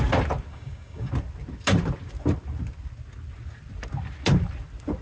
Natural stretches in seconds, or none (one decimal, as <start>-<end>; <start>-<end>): 0.0-0.5; 1.1-5.0